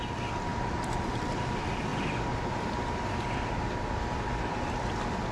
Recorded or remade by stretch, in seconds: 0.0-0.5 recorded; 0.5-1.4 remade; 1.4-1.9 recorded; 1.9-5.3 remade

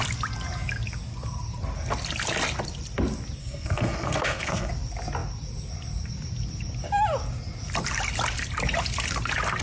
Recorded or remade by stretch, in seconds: 0.0-3.4 recorded; 3.4-4.7 remade; 4.7-9.6 recorded

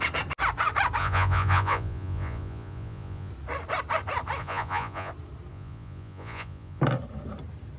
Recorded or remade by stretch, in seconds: 0.0-1.0 recorded; 1.0-3.3 remade; 3.3-4.4 recorded; 4.4-5.1 remade; 5.1-5.5 recorded; 5.5-6.8 remade; 6.8-7.8 recorded

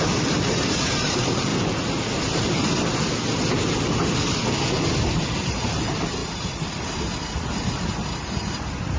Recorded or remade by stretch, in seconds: 0.0-1.5 remade; 1.5-4.8 recorded; 4.8-9.0 remade

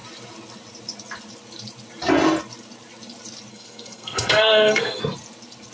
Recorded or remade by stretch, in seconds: 0.0-3.5 recorded; 3.5-5.0 remade; 5.0-5.7 recorded

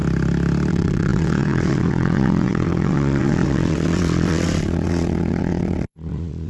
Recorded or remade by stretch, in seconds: 0.0-0.7 recorded; 0.7-6.5 remade